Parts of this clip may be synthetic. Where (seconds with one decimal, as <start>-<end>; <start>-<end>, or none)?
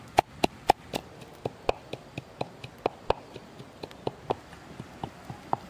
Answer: none